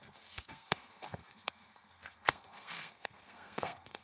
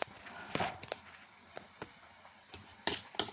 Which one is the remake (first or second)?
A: first